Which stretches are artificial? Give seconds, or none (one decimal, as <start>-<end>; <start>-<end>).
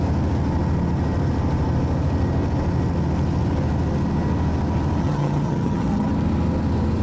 5.0-6.1